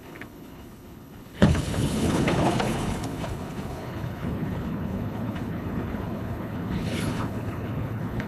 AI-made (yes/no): yes